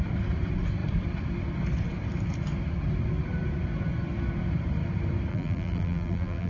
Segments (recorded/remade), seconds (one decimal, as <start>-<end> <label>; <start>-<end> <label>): 0.0-5.3 recorded; 5.3-6.5 remade

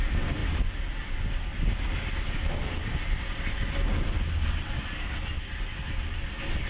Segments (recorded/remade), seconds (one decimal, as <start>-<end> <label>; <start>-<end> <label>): 0.0-6.7 remade

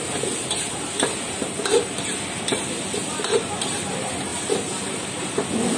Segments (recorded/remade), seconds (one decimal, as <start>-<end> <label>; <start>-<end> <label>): 0.0-5.8 recorded

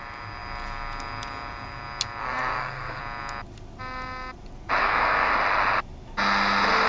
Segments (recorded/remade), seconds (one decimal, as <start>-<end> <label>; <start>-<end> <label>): 0.0-2.2 recorded; 2.2-3.0 remade; 3.0-4.8 recorded; 4.8-5.3 remade; 5.3-6.9 recorded

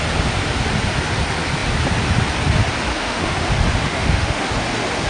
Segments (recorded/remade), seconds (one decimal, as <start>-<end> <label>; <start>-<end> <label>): 0.0-2.9 recorded; 2.9-3.5 remade; 3.5-3.9 recorded; 3.9-4.5 remade; 4.5-5.1 recorded

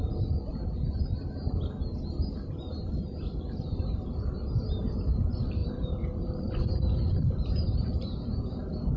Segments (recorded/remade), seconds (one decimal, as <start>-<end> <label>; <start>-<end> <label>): 0.0-5.6 recorded; 5.6-8.2 remade; 8.2-9.0 recorded

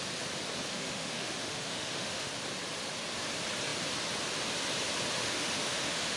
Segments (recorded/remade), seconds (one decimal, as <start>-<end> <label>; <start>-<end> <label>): 0.0-0.7 recorded; 0.7-2.3 remade; 2.3-5.2 recorded; 5.2-6.2 remade

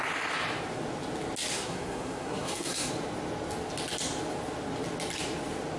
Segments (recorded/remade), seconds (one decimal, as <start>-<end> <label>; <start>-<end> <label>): 0.0-1.5 recorded; 1.5-2.9 remade; 2.9-5.8 recorded